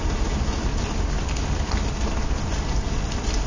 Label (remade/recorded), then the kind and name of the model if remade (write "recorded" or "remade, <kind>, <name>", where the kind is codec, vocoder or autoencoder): recorded